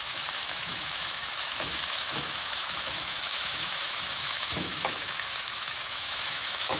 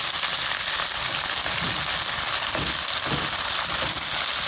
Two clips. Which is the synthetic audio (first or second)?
first